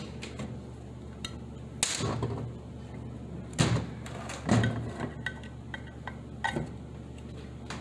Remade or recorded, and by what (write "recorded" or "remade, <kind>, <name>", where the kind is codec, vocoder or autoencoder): recorded